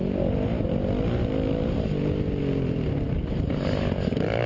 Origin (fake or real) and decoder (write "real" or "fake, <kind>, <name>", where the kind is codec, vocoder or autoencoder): real